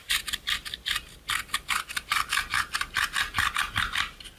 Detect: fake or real fake